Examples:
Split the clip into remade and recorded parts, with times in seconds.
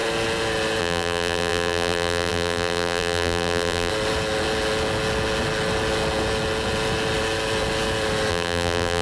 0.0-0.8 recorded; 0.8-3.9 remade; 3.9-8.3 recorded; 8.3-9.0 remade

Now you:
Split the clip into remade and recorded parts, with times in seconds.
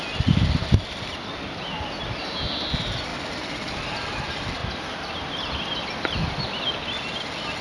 0.0-0.6 recorded; 0.6-2.2 remade; 2.2-3.1 recorded; 3.1-3.7 remade; 3.7-4.6 recorded; 4.6-6.6 remade; 6.6-7.6 recorded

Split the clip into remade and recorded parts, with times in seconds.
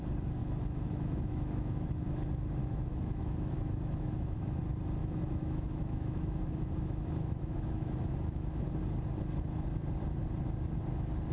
0.0-0.4 recorded; 0.4-1.9 remade; 1.9-2.6 recorded; 2.6-4.6 remade; 4.6-5.0 recorded; 5.0-8.6 remade; 8.6-11.3 recorded